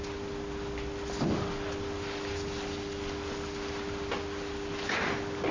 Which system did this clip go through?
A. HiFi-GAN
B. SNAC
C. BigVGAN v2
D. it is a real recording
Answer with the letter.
D